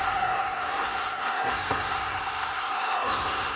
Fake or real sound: fake